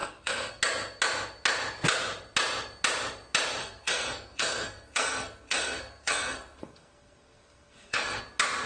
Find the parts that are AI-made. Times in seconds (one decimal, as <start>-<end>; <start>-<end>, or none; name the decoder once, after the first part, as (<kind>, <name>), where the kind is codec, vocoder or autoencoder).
0.0-0.6 (codec, SNAC); 3.6-8.2